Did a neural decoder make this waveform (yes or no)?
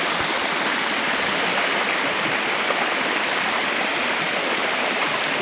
no